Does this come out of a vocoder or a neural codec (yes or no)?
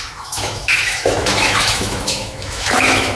yes